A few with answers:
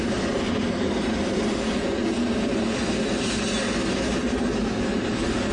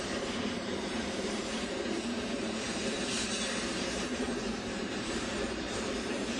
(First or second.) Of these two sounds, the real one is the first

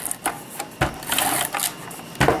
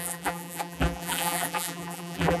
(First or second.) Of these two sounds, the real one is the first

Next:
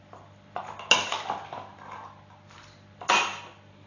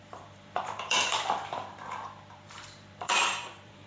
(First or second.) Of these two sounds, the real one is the first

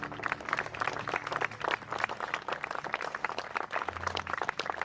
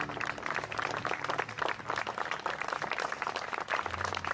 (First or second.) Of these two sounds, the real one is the first